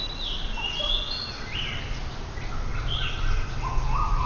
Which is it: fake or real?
real